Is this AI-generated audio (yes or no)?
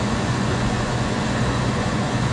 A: yes